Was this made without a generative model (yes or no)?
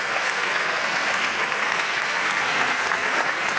no